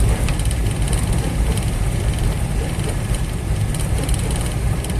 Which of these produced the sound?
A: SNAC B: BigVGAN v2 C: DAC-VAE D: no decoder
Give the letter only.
D